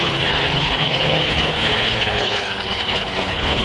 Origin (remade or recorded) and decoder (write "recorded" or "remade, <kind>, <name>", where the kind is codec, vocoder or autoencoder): remade, codec, HILCodec